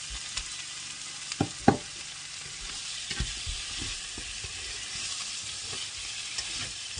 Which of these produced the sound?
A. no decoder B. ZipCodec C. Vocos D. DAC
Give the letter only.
A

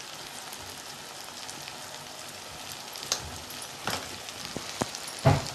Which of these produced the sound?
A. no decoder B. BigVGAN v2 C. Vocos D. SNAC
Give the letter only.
A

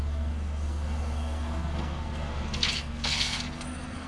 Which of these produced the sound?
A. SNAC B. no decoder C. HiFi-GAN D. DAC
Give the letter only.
A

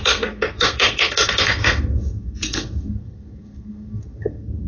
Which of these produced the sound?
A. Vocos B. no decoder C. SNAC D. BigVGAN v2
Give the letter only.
C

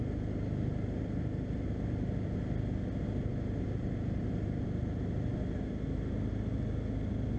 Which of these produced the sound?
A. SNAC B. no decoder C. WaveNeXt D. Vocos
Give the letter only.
B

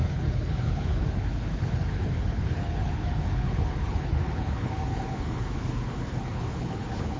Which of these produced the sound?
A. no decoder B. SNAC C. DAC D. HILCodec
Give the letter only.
D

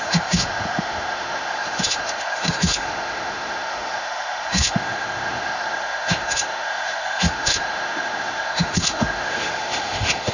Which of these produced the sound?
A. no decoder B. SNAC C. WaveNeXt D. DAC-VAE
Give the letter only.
D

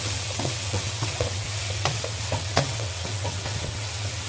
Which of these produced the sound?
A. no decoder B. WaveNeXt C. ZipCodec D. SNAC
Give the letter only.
B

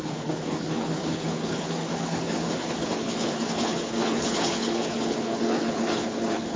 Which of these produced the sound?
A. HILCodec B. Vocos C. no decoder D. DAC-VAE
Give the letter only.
A